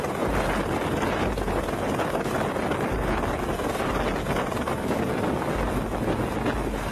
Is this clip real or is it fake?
real